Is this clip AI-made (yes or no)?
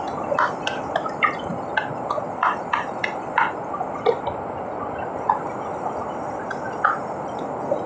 no